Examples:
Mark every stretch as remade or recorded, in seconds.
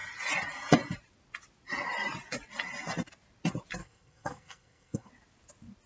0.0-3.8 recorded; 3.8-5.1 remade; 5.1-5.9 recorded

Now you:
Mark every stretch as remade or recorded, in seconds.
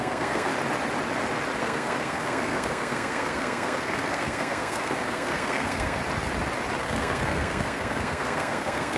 0.0-0.5 remade; 0.5-1.6 recorded; 1.6-6.0 remade; 6.0-6.8 recorded; 6.8-9.0 remade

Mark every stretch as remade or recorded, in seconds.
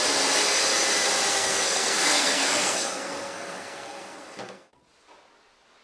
0.0-1.3 recorded; 1.3-4.8 remade; 4.8-5.8 recorded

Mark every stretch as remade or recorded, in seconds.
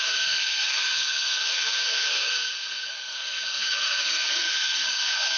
0.0-5.4 remade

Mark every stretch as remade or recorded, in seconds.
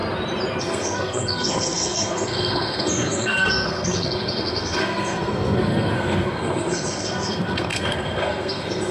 0.0-0.6 recorded; 0.6-8.9 remade